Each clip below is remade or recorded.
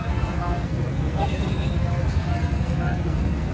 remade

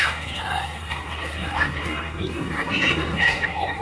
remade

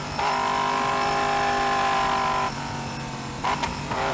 recorded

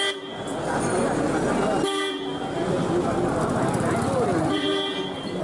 recorded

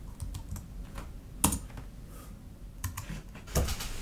recorded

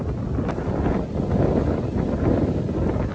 recorded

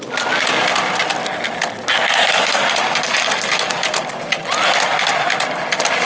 recorded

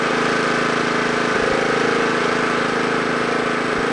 recorded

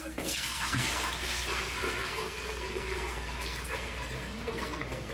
remade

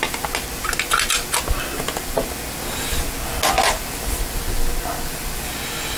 recorded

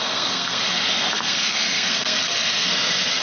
remade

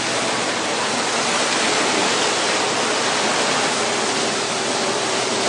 recorded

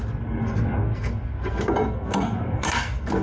remade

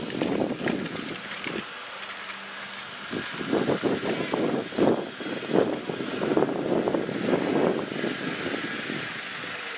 recorded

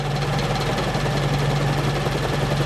recorded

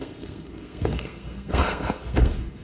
remade